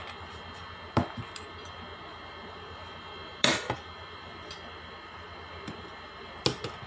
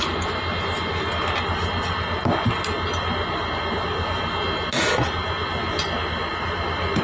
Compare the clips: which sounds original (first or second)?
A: second